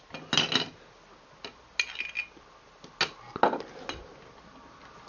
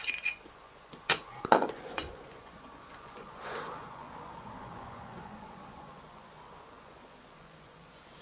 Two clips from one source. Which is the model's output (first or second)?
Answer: second